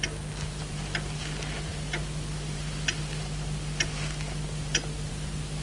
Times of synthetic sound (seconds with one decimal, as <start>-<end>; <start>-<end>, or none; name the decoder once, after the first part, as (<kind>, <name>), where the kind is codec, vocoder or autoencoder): none